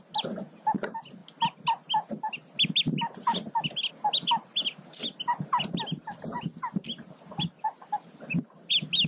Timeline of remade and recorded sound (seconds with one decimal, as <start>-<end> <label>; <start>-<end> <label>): 0.0-9.1 recorded